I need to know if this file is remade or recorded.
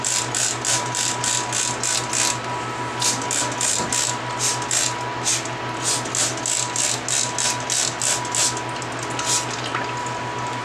recorded